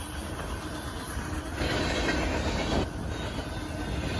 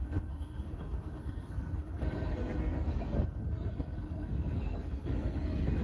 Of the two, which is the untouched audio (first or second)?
first